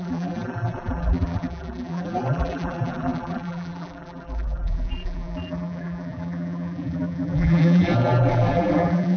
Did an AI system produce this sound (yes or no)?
yes